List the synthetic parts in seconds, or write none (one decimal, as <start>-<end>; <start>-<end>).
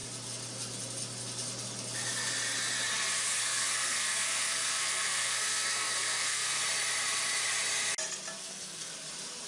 3.4-6.6; 8.4-8.9